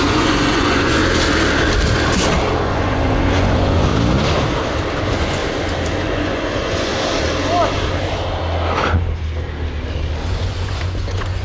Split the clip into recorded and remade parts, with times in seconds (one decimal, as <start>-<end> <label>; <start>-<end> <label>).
0.0-1.0 remade; 1.0-2.6 recorded; 2.6-3.9 remade; 3.9-5.0 recorded; 5.0-5.4 remade; 5.4-6.0 recorded; 6.0-6.9 remade; 6.9-10.2 recorded; 10.2-11.4 remade